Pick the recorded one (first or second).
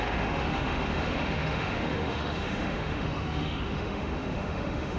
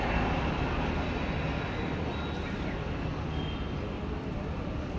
second